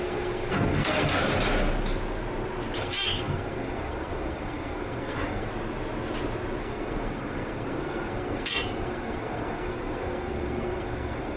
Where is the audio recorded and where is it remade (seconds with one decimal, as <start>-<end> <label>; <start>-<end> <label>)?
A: 0.0-1.2 remade; 1.2-2.8 recorded; 2.8-5.5 remade; 5.5-6.6 recorded; 6.6-11.4 remade